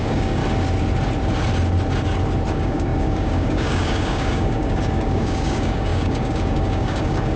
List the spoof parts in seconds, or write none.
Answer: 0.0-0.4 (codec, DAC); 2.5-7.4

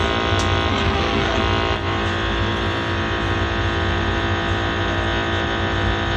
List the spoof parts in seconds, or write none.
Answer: 0.7-1.4 (codec, SNAC)

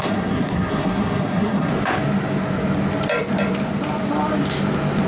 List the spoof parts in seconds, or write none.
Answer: 0.0-1.7 (codec, SNAC)

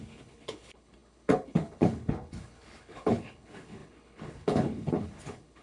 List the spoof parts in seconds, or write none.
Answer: 0.0-5.6 (codec, HILCodec)

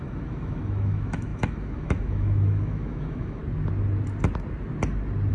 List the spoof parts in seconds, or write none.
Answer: 0.0-3.4 (autoencoder, DAC-VAE)

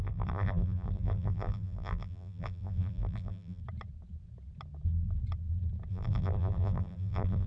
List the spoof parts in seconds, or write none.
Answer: 0.0-3.6 (vocoder, BigVGAN v2); 5.9-7.5

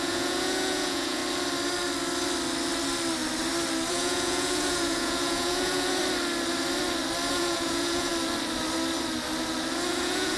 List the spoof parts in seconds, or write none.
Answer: 0.0-1.2 (vocoder, Vocos); 3.9-6.0; 7.3-8.1; 9.9-10.4

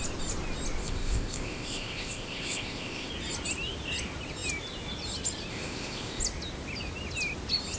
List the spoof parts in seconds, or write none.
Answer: 0.8-3.1 (codec, ZipCodec); 5.5-6.2